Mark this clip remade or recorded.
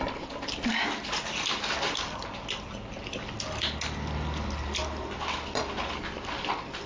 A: recorded